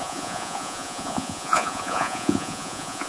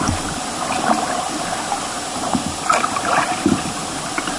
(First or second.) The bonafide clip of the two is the second